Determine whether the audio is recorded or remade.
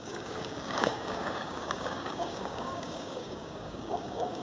remade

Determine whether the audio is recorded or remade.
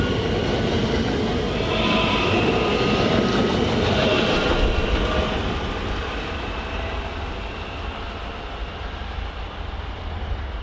recorded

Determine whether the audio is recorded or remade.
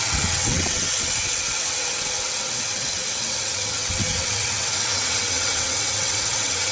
remade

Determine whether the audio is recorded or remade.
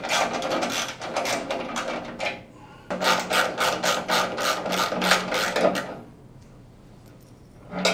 recorded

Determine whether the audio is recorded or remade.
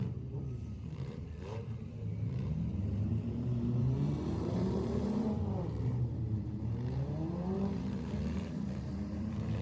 remade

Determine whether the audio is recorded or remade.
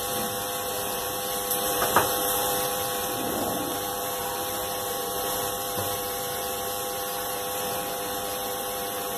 remade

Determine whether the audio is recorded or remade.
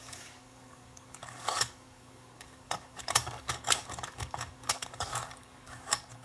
remade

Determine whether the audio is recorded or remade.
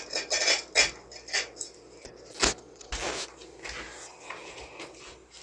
recorded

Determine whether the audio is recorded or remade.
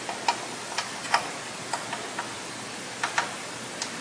recorded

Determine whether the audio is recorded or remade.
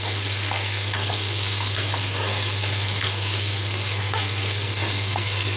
remade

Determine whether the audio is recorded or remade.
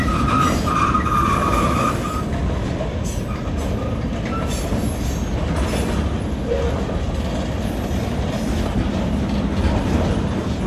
recorded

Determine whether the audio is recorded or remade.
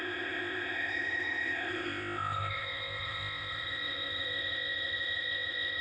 remade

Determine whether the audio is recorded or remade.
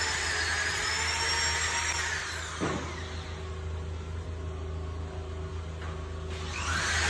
recorded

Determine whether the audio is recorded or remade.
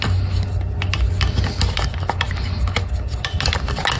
recorded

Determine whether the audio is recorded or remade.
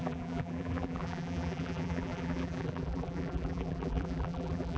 remade